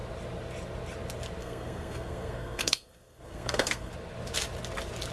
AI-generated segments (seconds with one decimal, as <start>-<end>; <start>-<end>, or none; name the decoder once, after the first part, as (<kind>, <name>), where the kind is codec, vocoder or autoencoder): 1.4-3.9 (codec, SNAC)